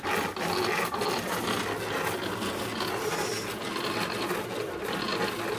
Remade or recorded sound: recorded